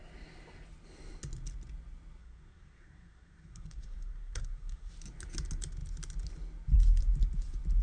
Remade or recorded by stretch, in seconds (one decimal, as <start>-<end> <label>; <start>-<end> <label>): 0.0-2.2 recorded; 2.2-4.9 remade; 4.9-7.8 recorded